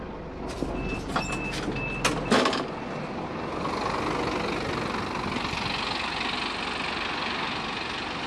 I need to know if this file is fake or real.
real